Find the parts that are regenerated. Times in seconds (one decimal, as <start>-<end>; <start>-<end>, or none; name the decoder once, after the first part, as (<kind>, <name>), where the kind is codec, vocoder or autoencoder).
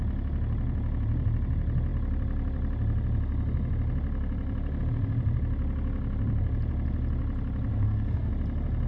7.7-8.3 (codec, SNAC)